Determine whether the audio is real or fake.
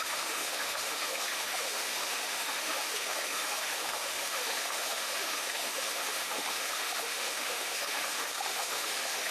fake